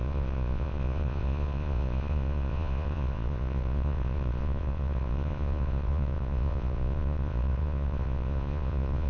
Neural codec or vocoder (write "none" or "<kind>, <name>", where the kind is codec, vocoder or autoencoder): vocoder, Vocos